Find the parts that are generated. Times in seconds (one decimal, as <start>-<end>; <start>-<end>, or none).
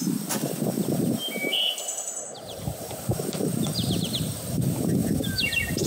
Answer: 1.5-4.6